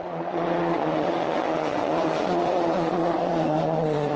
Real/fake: fake